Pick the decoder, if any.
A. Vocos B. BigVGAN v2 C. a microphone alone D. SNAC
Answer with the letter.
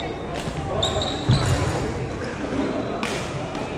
C